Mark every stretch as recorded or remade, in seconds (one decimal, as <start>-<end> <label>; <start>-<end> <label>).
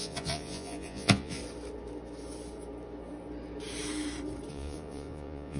0.0-1.4 remade; 1.4-4.5 recorded; 4.5-5.6 remade